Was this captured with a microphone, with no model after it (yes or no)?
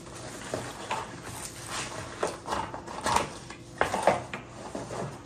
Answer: yes